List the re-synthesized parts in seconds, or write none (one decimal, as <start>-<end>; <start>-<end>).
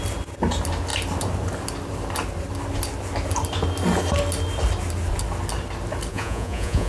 6.1-6.9